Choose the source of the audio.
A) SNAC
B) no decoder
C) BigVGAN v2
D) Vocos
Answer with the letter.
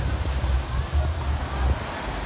B